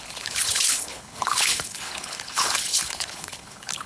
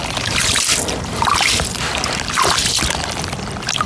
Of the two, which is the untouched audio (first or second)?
second